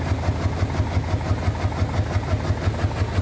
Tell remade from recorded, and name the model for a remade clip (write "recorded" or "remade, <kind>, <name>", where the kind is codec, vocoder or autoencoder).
recorded